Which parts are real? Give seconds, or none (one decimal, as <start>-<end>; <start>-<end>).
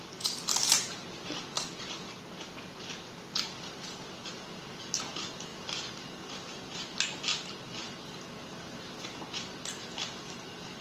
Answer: 7.3-8.5